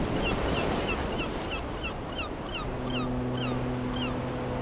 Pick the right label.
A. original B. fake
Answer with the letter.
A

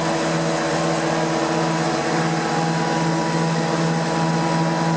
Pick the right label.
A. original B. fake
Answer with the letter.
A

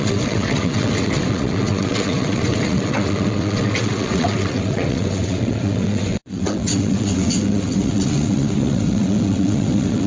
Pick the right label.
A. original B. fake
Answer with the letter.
B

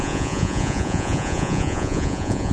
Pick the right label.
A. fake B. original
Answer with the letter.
A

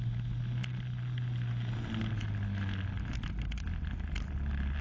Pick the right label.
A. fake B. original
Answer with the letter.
B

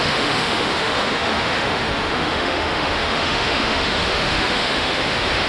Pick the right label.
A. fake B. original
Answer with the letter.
A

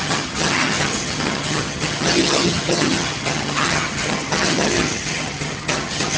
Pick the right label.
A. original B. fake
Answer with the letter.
B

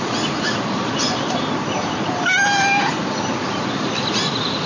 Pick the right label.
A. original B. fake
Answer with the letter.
B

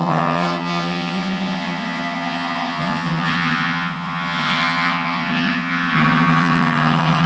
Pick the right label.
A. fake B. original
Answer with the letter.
A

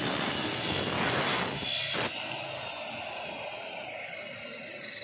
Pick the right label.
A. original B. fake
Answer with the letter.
A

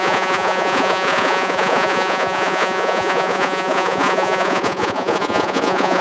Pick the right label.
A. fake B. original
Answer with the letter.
A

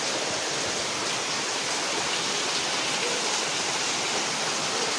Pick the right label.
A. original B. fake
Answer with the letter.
A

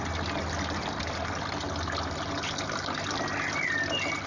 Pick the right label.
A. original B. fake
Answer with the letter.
A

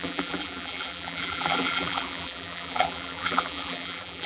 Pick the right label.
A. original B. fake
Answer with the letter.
B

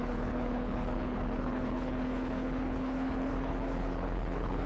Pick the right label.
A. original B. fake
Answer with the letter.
B